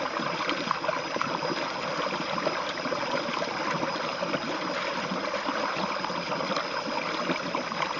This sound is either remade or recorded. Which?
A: recorded